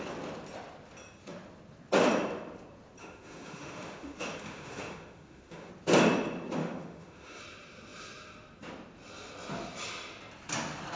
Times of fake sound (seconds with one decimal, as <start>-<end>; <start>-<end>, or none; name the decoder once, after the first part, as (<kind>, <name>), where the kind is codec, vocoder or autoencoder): 3.0-5.7 (autoencoder, DAC-VAE); 6.6-7.4